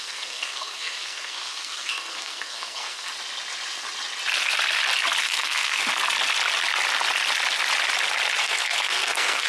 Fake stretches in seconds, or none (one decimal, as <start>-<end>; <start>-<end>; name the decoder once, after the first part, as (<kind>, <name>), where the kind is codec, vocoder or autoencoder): 0.0-3.1 (codec, SNAC); 5.2-5.9; 8.4-9.5